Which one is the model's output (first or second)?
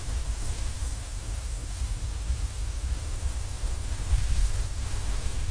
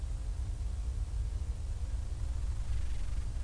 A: first